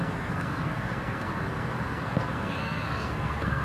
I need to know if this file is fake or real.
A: fake